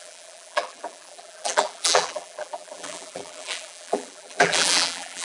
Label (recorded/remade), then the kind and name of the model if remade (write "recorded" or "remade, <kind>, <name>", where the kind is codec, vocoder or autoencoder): remade, vocoder, BigVGAN v2